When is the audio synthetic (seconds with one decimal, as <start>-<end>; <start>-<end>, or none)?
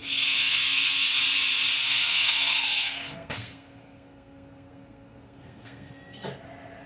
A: 0.0-1.2; 1.8-5.9